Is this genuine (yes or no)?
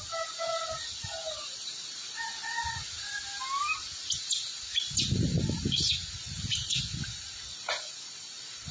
yes